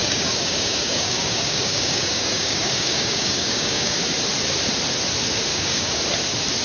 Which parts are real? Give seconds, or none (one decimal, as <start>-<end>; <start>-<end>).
4.0-5.5; 6.0-6.6